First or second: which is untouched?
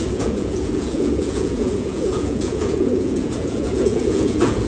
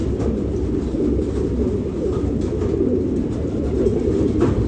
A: second